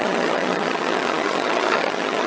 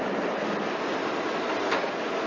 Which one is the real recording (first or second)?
second